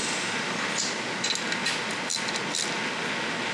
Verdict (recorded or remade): recorded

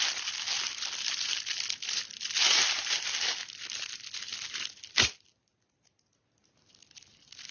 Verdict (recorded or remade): recorded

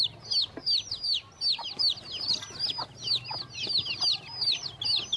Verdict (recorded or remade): recorded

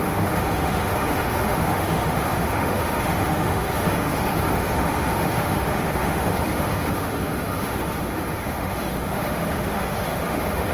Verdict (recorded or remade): remade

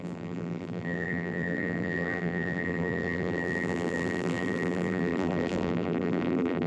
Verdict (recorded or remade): remade